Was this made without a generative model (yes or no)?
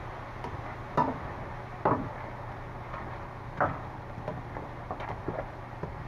yes